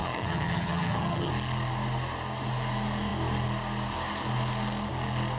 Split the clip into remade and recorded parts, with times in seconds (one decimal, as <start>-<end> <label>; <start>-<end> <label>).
0.0-1.3 remade; 1.3-5.4 recorded